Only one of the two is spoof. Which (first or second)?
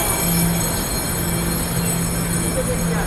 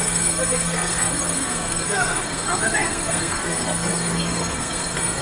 second